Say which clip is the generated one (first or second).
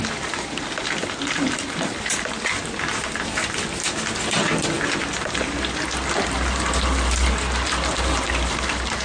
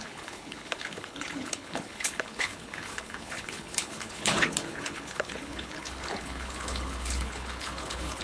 second